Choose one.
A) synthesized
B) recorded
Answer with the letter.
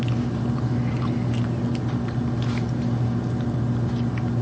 A